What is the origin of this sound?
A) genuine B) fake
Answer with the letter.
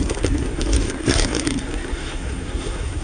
B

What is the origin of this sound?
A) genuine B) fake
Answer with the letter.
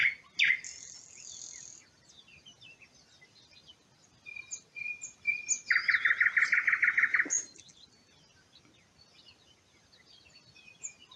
A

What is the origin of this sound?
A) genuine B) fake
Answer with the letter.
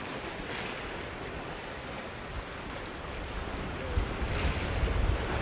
A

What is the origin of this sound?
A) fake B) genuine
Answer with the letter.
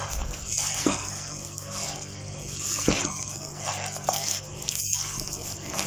A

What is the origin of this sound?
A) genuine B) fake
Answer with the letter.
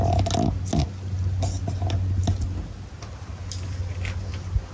A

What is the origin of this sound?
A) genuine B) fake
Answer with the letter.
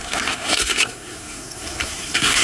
B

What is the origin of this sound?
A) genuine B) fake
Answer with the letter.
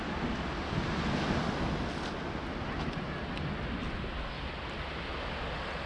A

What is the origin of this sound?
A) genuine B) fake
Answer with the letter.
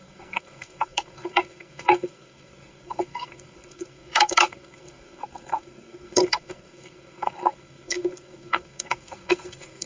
B